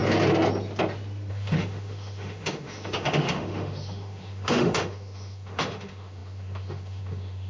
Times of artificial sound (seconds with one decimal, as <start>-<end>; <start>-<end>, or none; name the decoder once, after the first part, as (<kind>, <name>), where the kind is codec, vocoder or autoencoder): 1.3-7.5 (autoencoder, DAC-VAE)